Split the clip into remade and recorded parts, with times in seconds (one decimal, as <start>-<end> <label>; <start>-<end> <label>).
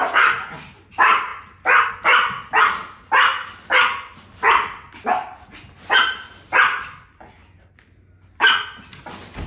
0.0-9.5 recorded